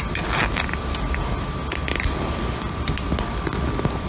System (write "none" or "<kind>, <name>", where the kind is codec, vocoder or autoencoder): none